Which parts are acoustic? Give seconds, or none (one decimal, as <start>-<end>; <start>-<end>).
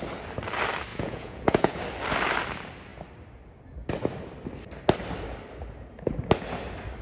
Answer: 0.0-0.9; 1.8-7.0